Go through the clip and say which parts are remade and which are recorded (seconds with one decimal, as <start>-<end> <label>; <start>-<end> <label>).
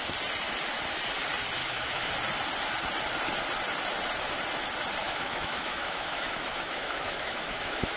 0.0-1.6 recorded; 1.6-2.1 remade; 2.1-5.0 recorded; 5.0-8.0 remade